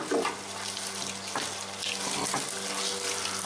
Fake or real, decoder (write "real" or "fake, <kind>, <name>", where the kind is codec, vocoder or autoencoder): real